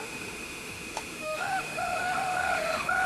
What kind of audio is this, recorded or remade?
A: remade